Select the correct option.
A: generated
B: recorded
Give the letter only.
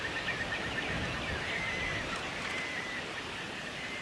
B